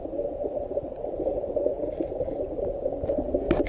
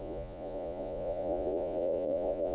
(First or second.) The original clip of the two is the first